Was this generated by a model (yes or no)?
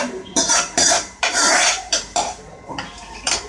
yes